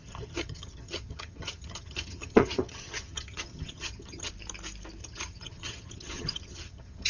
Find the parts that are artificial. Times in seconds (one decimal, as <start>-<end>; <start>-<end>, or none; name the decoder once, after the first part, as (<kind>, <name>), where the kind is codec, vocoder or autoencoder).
0.0-4.3 (vocoder, HiFi-GAN); 5.0-7.1